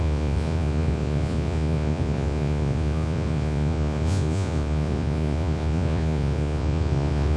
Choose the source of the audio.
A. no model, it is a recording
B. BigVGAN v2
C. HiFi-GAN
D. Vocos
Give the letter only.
D